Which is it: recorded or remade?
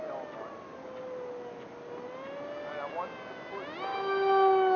recorded